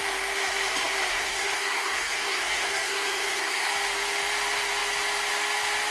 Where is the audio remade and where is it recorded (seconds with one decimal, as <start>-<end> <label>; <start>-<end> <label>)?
0.0-1.1 recorded; 1.1-3.7 remade; 3.7-5.9 recorded